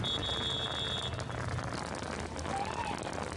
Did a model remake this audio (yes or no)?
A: no